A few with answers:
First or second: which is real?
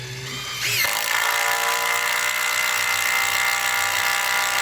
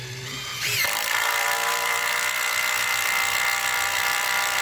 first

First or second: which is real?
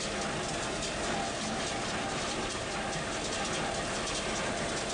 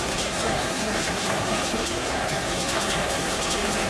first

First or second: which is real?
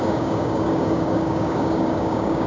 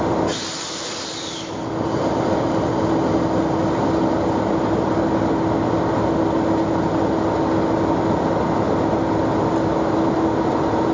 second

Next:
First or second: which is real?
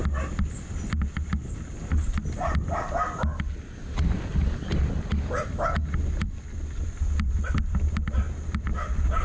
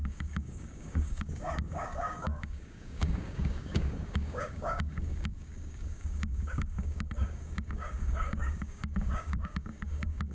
first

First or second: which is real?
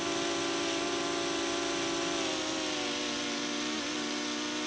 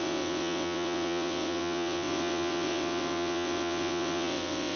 first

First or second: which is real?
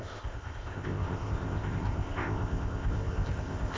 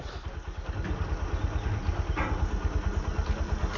second